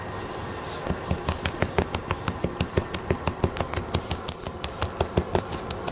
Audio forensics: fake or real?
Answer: real